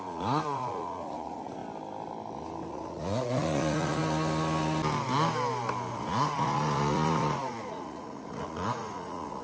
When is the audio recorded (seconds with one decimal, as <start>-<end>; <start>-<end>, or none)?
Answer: 1.6-2.7; 4.0-5.9